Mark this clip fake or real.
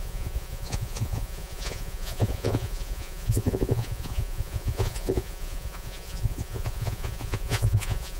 fake